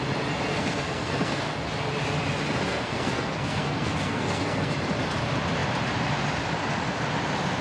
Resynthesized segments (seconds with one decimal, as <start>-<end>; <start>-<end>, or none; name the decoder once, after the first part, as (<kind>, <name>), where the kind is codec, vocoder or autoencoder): 0.5-1.4 (codec, SNAC); 2.7-4.7